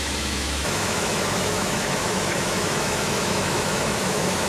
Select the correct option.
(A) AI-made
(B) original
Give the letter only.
A